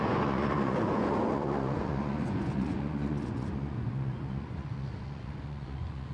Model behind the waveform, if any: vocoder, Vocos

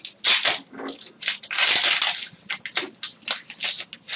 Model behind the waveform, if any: none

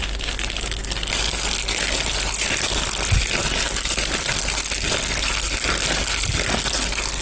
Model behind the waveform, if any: none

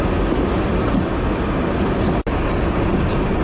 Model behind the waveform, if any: none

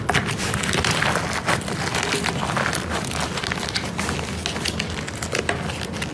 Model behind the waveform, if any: none